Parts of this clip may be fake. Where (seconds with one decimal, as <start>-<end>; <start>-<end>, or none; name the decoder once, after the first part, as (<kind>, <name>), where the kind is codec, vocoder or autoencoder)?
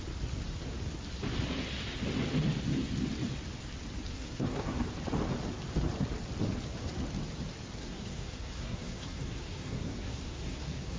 4.1-4.8 (codec, SNAC); 7.8-11.0